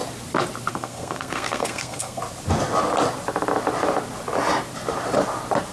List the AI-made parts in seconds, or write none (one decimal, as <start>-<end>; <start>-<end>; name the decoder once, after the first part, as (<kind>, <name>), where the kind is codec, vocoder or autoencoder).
0.7-2.2 (codec, SNAC)